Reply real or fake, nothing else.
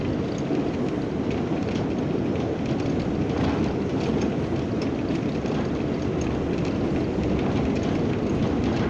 real